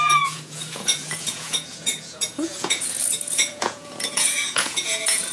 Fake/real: fake